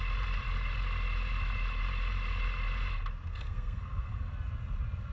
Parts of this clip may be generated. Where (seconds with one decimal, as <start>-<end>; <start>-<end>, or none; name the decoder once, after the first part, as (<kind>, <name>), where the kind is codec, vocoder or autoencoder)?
3.3-4.3 (codec, SNAC)